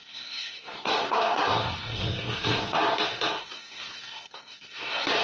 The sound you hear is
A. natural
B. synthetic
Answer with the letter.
B